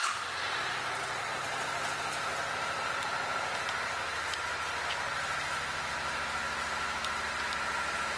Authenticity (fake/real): real